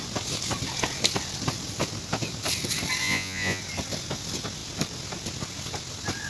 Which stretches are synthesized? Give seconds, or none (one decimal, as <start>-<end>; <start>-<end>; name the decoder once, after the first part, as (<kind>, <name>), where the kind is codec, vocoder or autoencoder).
3.0-3.6 (vocoder, Vocos)